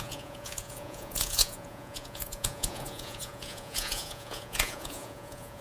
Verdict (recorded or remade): remade